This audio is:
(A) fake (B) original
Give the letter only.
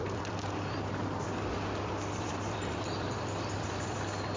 A